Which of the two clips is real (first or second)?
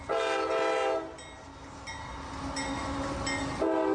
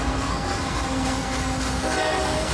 first